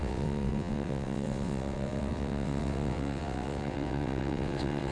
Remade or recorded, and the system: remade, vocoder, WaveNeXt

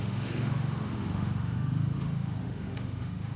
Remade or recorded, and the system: remade, autoencoder, DAC-VAE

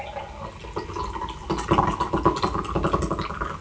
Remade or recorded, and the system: recorded